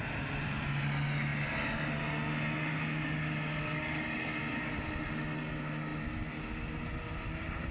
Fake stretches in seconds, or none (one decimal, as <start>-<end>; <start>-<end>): 4.5-5.2